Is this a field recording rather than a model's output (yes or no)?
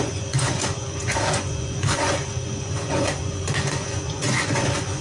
no